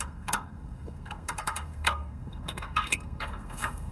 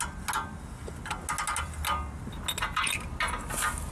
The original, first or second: second